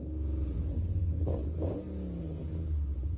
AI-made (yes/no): no